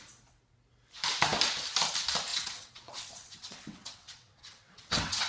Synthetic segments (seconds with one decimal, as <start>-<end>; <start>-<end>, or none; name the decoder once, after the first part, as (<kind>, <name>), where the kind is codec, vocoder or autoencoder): 2.3-5.3 (vocoder, WaveNeXt)